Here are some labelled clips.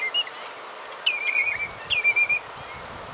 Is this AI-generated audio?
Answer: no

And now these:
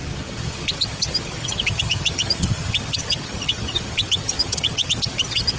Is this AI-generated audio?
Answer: yes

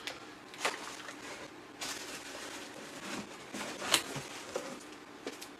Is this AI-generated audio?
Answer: no